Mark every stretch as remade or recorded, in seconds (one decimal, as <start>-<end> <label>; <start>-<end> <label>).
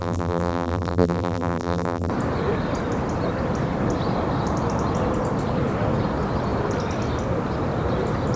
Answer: 0.0-2.1 remade; 2.1-8.4 recorded